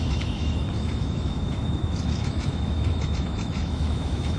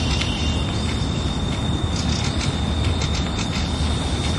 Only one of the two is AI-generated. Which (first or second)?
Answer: first